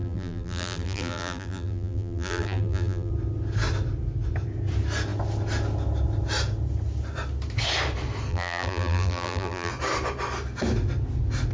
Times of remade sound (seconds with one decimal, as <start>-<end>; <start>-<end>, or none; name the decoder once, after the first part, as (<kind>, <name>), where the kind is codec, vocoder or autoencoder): 0.0-3.1 (vocoder, BigVGAN v2); 8.3-9.7